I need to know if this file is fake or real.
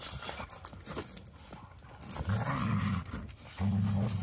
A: real